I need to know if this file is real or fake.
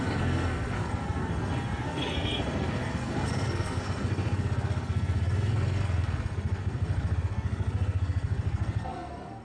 fake